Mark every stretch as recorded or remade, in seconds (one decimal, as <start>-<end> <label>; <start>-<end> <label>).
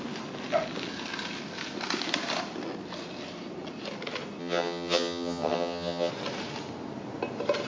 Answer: 0.0-4.4 recorded; 4.4-6.1 remade; 6.1-7.7 recorded